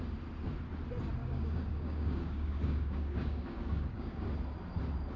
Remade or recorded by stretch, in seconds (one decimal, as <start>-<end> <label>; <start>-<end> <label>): 0.0-1.2 recorded; 1.2-4.3 remade; 4.3-5.2 recorded